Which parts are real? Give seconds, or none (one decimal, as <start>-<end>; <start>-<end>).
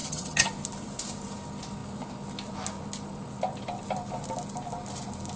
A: 0.5-5.4